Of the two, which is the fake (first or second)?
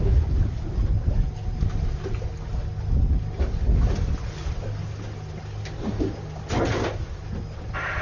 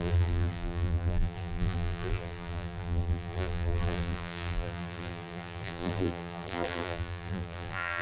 second